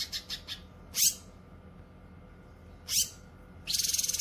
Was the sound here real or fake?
real